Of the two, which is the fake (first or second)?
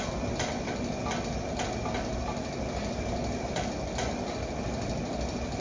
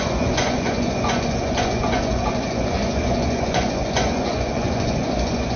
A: second